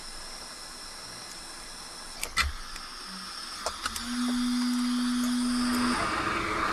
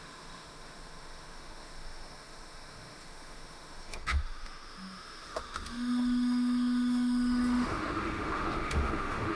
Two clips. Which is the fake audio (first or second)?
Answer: second